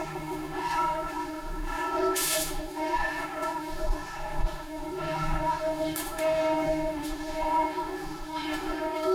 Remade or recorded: remade